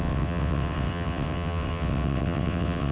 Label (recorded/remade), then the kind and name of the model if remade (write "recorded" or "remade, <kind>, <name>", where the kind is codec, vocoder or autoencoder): remade, vocoder, WaveNeXt